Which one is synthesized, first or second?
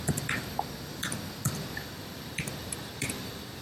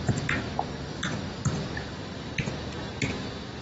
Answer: first